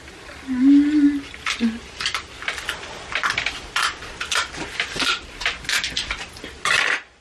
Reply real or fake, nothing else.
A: real